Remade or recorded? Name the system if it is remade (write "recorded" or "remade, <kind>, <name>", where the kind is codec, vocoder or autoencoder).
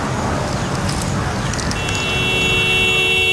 recorded